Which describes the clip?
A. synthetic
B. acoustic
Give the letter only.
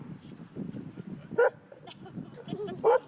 B